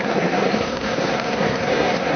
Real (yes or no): no